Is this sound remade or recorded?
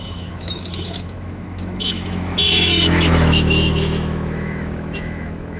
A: remade